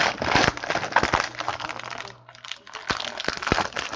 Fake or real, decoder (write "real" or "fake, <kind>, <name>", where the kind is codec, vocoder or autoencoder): real